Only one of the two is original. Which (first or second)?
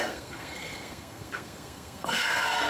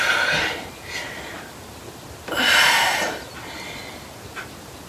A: second